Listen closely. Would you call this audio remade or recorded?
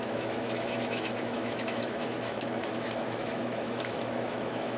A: remade